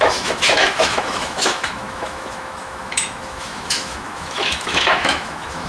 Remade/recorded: remade